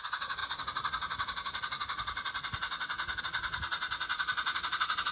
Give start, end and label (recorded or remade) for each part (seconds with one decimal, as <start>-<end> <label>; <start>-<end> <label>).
0.0-0.4 recorded; 0.4-3.2 remade; 3.2-5.1 recorded